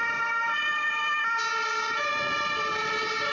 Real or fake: real